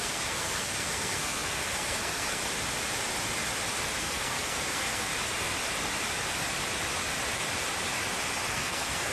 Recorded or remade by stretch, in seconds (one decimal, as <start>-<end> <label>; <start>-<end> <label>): 0.0-2.4 remade; 2.4-4.0 recorded; 4.0-5.1 remade; 5.1-8.5 recorded; 8.5-9.1 remade